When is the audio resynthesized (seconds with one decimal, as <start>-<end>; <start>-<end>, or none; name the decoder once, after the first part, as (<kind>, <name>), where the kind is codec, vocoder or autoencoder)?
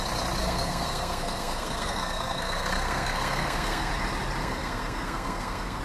0.4-3.9 (codec, SNAC); 4.4-5.8